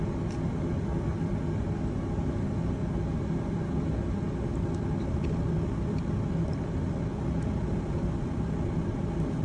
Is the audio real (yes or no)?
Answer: yes